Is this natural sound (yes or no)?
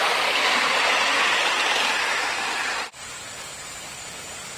yes